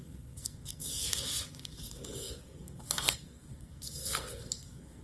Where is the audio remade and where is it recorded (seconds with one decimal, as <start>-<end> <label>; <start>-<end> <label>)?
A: 0.0-5.0 remade

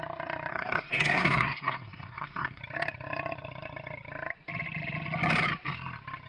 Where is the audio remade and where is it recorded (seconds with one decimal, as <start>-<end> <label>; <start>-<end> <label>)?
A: 0.0-0.5 recorded; 0.5-2.6 remade; 2.6-6.3 recorded